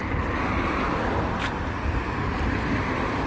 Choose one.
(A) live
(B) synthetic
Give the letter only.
A